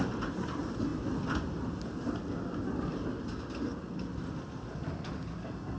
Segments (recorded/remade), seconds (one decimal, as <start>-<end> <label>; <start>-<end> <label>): 0.0-5.8 recorded

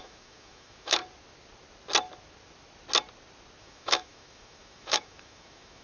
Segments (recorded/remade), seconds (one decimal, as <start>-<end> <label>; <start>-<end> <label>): 0.0-1.0 remade; 1.0-3.6 recorded; 3.6-5.8 remade

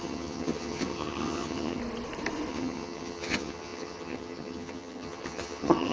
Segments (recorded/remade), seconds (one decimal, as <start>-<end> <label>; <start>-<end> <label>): 0.0-1.8 remade; 1.8-2.5 recorded; 2.5-5.9 remade

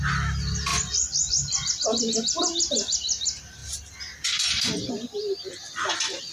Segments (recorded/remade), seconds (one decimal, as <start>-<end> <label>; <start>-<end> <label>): 0.0-3.6 recorded; 3.6-4.9 remade; 4.9-6.3 recorded

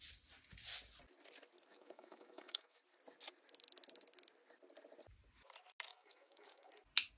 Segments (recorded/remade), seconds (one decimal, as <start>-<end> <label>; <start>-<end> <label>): 0.0-1.7 recorded; 1.7-2.8 remade; 2.8-5.9 recorded; 5.9-6.7 remade; 6.7-7.2 recorded

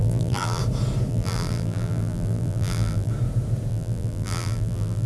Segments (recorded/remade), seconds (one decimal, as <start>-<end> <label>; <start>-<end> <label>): 0.0-0.6 remade; 0.6-1.1 recorded; 1.1-3.1 remade; 3.1-3.7 recorded; 3.7-5.1 remade

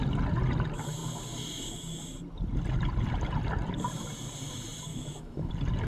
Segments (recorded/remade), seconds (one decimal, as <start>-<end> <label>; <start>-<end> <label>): 0.0-4.9 recorded; 4.9-5.5 remade; 5.5-5.9 recorded